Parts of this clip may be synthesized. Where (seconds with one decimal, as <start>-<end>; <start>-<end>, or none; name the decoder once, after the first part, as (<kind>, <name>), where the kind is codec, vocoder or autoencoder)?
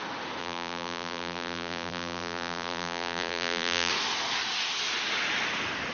0.4-3.9 (vocoder, BigVGAN v2)